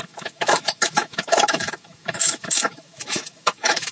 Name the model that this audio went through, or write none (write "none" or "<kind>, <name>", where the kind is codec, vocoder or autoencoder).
autoencoder, DAC-VAE